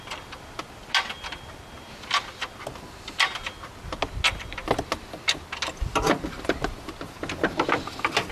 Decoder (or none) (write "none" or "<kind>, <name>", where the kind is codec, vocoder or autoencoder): none